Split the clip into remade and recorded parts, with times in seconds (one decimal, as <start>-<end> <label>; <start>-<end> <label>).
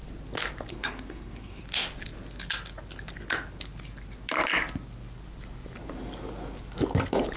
0.0-0.7 recorded; 0.7-1.6 remade; 1.6-7.4 recorded